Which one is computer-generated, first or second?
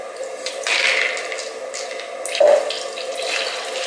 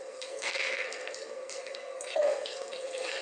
second